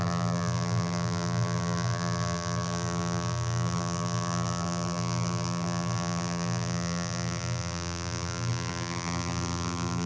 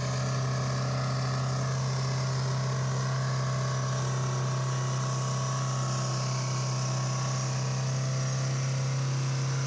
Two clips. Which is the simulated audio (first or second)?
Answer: first